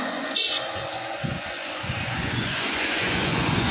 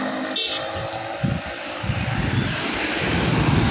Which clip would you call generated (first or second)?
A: first